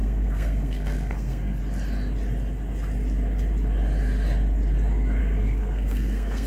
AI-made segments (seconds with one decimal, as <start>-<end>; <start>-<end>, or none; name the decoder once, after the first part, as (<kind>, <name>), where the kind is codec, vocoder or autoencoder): 0.0-1.6 (codec, SNAC); 5.2-6.5